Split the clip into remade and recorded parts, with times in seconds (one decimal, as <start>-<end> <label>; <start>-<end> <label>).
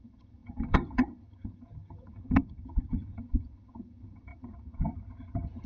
0.0-5.7 remade